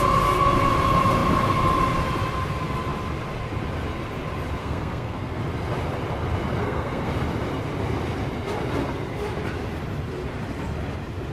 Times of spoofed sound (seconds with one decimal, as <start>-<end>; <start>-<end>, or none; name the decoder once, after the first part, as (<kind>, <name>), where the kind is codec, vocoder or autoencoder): 4.6-5.4 (codec, SNAC); 6.6-7.1